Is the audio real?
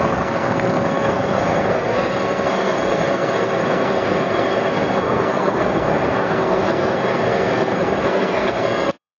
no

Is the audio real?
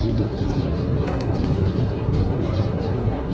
no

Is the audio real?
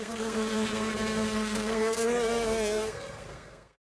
no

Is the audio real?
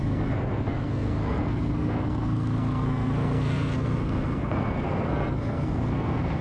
no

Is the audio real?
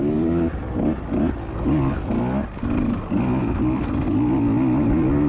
yes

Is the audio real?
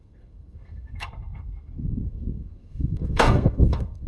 no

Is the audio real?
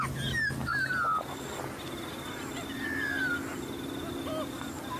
yes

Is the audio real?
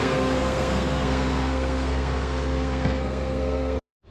no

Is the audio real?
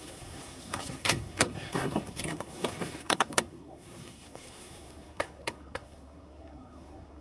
no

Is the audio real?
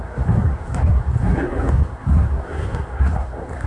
no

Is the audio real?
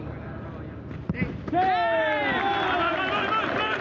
yes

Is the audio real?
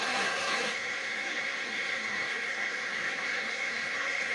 no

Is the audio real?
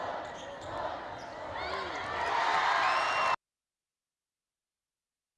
yes